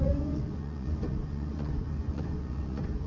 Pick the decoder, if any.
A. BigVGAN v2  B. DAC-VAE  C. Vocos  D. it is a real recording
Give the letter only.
C